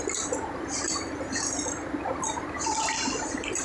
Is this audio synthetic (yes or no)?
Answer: no